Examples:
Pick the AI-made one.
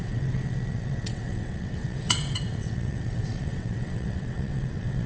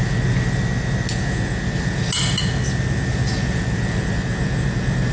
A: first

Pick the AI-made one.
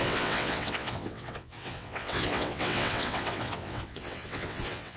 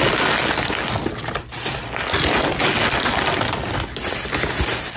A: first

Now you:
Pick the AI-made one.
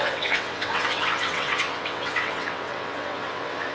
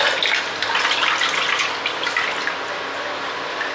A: first